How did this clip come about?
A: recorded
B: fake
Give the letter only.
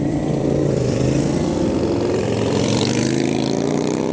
B